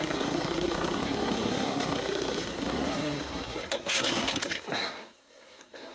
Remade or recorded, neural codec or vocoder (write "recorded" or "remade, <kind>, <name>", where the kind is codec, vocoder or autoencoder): remade, codec, SNAC